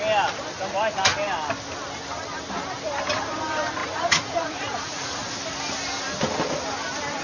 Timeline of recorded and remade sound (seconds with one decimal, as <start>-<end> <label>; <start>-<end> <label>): 0.0-3.8 recorded; 3.8-5.3 remade; 5.3-7.2 recorded